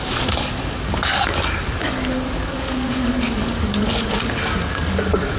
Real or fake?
fake